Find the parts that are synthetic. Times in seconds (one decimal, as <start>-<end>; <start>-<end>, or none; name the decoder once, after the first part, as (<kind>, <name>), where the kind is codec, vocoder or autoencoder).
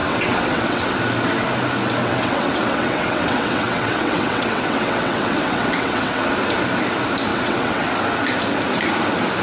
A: 0.0-1.0 (vocoder, WaveNeXt); 2.0-6.2; 7.3-7.9